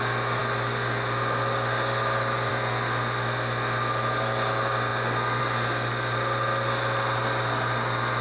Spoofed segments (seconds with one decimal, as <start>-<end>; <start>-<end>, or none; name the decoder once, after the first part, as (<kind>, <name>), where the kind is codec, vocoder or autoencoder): none